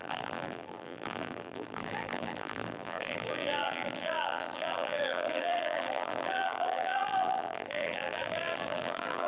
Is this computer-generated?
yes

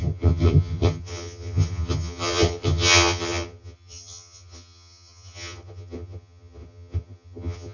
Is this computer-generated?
yes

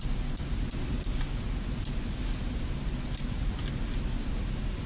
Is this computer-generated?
no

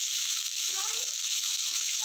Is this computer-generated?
yes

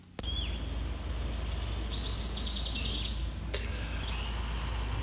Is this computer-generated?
no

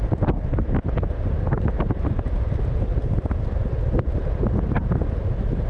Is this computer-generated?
no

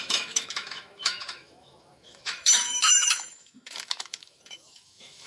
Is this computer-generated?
yes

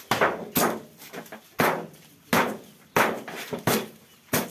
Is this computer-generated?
no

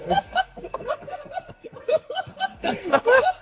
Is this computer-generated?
yes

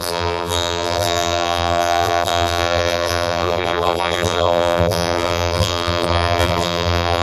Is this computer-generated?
yes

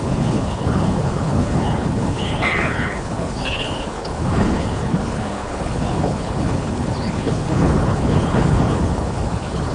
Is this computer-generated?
yes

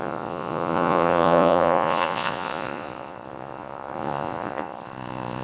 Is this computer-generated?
yes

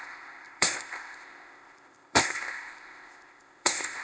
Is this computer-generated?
yes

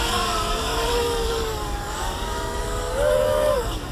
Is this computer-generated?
yes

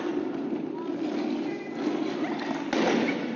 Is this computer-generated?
no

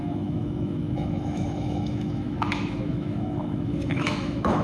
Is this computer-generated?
yes